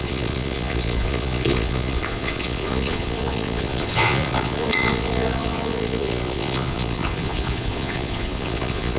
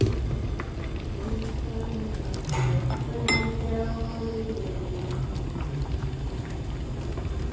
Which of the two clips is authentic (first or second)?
second